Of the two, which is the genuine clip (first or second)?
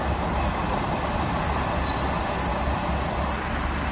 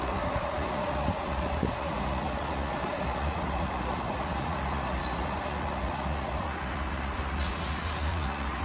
first